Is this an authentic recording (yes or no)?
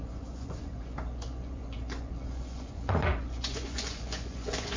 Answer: no